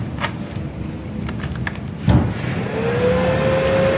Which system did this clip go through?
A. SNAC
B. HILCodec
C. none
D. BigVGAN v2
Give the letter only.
C